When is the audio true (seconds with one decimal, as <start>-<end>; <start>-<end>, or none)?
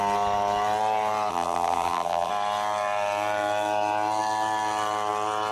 0.0-1.3; 2.3-5.5